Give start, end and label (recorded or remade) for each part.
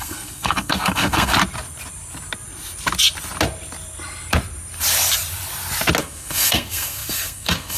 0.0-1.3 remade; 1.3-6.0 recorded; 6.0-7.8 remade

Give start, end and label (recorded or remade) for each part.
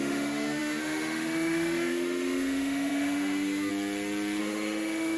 0.0-3.7 remade; 3.7-4.4 recorded; 4.4-5.2 remade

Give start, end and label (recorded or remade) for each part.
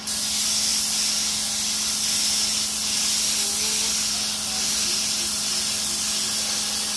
0.0-7.0 recorded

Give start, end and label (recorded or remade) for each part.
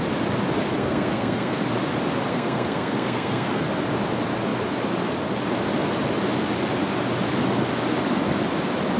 0.0-0.8 recorded; 0.8-1.6 remade; 1.6-2.3 recorded; 2.3-3.6 remade; 3.6-9.0 recorded